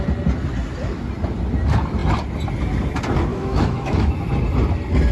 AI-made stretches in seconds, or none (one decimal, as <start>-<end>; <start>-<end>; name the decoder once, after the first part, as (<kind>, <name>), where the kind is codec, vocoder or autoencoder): 3.3-4.1 (autoencoder, DAC-VAE)